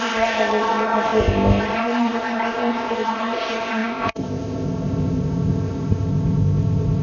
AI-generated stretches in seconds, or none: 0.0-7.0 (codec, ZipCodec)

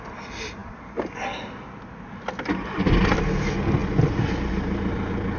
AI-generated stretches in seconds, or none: none

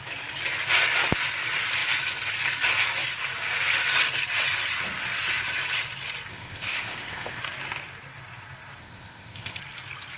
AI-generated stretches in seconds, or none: 6.3-7.4 (codec, ZipCodec); 8.8-9.6

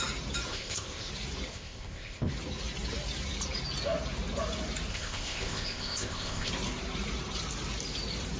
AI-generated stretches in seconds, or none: 0.5-1.1 (codec, ZipCodec); 1.5-2.3; 4.9-6.5

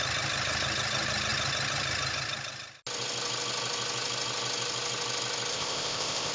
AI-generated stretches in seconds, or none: 5.5-6.3 (codec, ZipCodec)

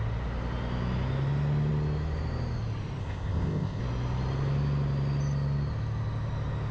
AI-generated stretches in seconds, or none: 3.0-3.8 (codec, ZipCodec)

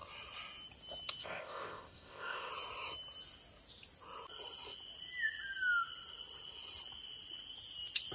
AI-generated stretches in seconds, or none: 1.2-2.5 (codec, ZipCodec)